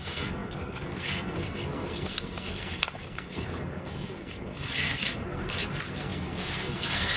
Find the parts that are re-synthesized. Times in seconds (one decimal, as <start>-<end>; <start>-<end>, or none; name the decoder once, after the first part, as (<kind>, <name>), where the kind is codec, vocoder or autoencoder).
0.0-7.2 (codec, SNAC)